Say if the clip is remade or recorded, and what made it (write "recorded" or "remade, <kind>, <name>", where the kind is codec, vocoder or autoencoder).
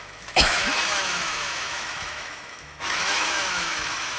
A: remade, autoencoder, DAC-VAE